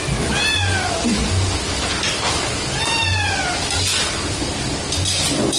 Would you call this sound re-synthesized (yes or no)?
no